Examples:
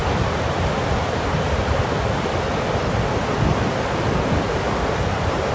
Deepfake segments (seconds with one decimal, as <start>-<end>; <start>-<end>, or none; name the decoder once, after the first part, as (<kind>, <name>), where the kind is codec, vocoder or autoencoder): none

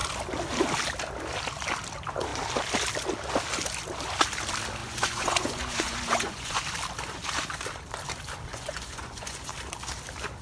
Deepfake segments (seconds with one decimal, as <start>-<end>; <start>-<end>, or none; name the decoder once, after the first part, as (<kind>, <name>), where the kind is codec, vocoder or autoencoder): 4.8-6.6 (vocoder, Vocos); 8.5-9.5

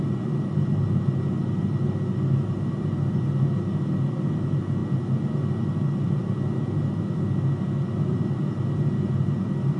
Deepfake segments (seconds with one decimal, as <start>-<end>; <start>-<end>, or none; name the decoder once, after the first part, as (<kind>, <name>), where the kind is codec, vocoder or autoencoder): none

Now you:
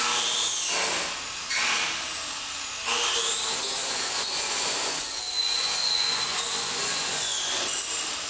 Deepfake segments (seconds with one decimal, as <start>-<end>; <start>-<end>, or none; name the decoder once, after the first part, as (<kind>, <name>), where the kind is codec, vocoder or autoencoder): 3.8-7.8 (vocoder, Vocos)